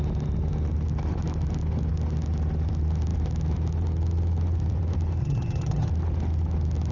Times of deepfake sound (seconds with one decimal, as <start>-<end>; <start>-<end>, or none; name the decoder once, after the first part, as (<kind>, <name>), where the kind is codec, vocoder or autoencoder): 5.2-5.9 (vocoder, HiFi-GAN)